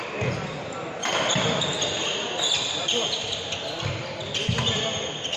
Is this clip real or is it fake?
real